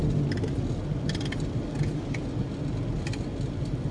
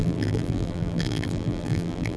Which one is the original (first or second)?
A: first